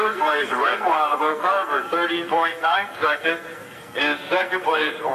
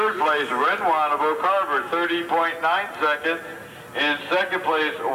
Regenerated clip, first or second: first